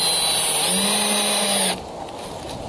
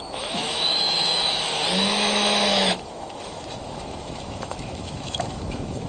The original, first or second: first